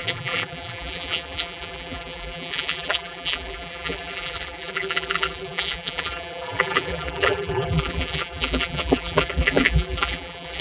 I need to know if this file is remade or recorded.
remade